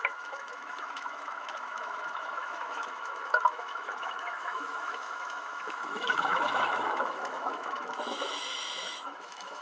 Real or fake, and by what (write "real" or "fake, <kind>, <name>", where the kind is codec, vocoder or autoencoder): fake, autoencoder, DAC-VAE